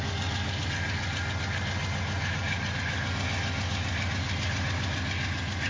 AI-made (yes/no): no